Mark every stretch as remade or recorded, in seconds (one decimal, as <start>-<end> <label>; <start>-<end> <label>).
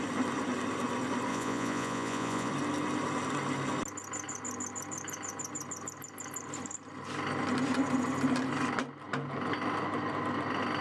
0.0-1.3 recorded; 1.3-2.5 remade; 2.5-10.8 recorded